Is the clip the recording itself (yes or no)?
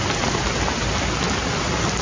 yes